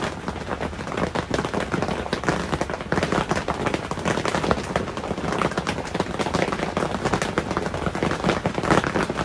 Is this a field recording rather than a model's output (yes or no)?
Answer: yes